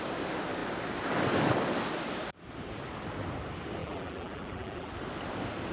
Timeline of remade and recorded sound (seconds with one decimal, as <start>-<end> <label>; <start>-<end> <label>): 0.0-3.8 recorded; 3.8-4.9 remade; 4.9-5.7 recorded